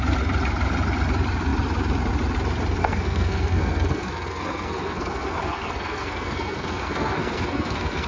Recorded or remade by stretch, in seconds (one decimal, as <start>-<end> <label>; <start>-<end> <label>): 0.0-2.8 recorded; 2.8-8.1 remade